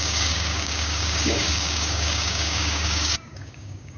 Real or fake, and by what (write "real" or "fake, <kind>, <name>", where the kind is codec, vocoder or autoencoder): fake, codec, DAC